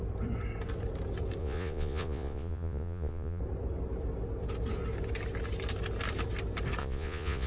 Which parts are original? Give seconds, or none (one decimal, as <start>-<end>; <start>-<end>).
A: 0.0-1.4; 3.4-6.8

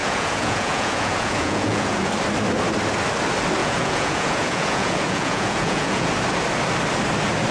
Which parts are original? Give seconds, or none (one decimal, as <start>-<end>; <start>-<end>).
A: 2.1-3.6; 6.1-7.5

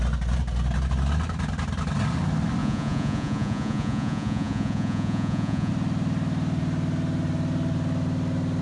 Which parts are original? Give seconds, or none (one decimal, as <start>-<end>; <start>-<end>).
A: 0.0-2.6; 5.7-8.6

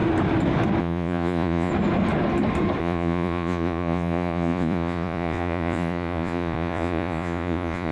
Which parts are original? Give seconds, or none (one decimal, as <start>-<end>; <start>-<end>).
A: 0.0-0.8; 1.7-2.8

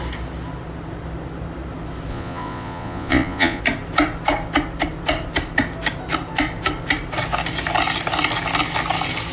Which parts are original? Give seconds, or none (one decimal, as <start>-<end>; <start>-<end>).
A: 0.0-2.1; 3.6-9.3

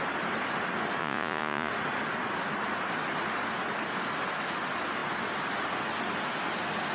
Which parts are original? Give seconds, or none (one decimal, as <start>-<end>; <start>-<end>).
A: 0.0-1.0; 1.7-6.9

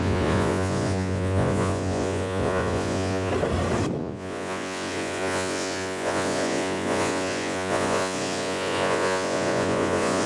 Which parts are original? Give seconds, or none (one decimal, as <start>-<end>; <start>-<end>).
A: 3.3-4.0

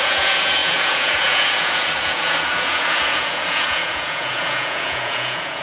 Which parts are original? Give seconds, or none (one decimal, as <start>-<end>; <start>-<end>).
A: none